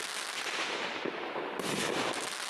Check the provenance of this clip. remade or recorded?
recorded